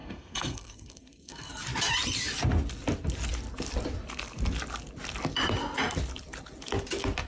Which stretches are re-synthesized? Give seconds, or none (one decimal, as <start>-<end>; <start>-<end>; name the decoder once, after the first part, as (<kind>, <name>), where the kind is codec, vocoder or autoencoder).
0.0-1.5 (codec, SNAC)